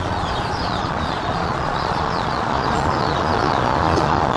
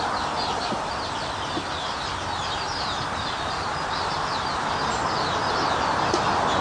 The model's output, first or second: first